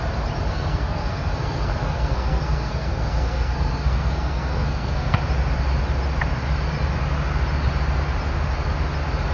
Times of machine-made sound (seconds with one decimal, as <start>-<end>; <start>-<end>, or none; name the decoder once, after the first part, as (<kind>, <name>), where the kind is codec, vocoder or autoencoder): 0.5-5.2 (codec, SNAC)